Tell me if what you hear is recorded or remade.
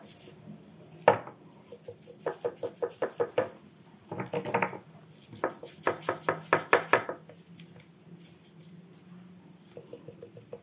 recorded